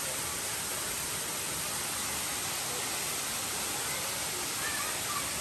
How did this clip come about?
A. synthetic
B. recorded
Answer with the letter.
B